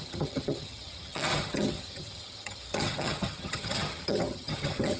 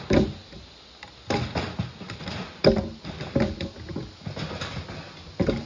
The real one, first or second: second